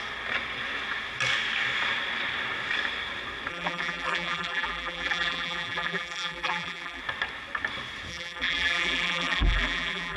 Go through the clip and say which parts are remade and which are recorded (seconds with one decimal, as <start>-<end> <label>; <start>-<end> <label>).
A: 0.0-3.5 recorded; 3.5-7.0 remade; 7.0-8.1 recorded; 8.1-10.2 remade